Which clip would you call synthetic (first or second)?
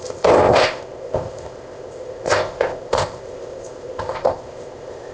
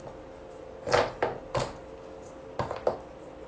first